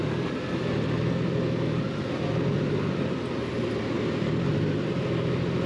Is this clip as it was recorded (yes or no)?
yes